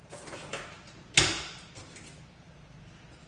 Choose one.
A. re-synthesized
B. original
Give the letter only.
B